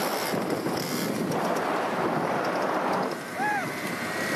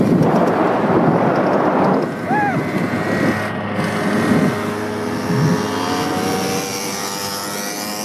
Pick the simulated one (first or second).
first